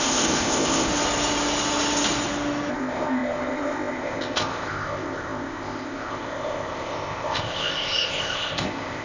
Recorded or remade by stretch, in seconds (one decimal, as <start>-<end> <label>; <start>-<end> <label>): 0.0-0.9 remade; 0.9-2.7 recorded; 2.7-9.0 remade